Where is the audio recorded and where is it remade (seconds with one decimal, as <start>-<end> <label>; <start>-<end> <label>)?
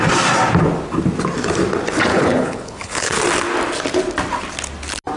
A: 0.0-2.1 recorded; 2.1-3.2 remade; 3.2-5.2 recorded